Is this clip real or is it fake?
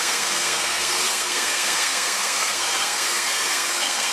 fake